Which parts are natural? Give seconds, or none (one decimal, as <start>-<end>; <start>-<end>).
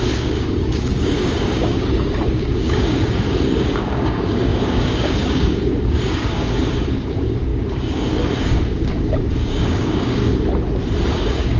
10.2-11.1